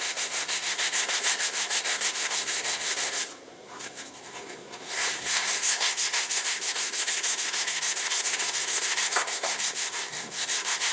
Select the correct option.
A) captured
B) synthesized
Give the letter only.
B